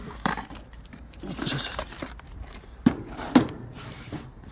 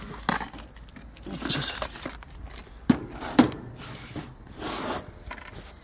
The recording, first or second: second